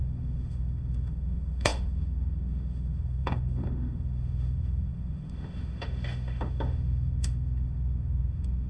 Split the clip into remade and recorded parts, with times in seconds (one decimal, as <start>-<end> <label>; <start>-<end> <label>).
0.0-8.7 remade